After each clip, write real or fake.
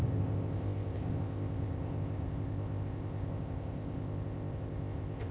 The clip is fake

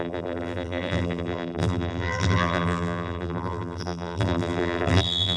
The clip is fake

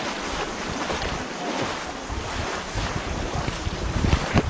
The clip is fake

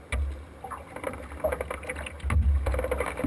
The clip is real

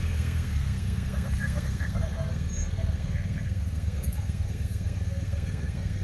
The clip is fake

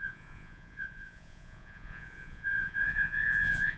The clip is fake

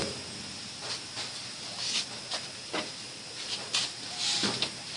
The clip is real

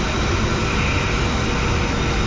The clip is real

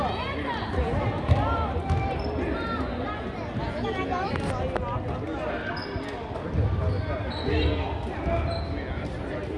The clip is real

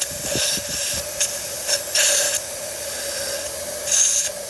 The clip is real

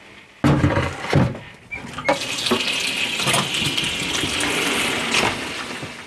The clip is real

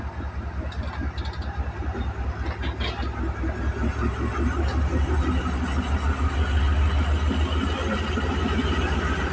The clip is real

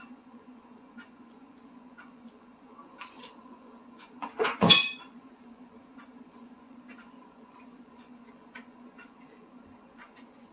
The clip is fake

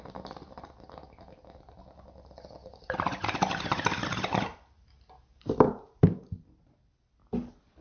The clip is real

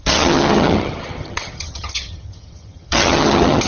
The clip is fake